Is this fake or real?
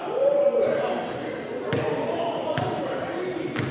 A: real